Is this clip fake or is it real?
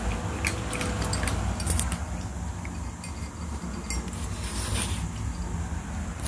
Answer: real